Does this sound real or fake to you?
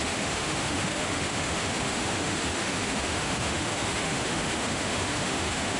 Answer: fake